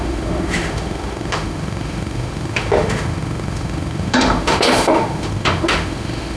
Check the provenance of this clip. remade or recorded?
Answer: remade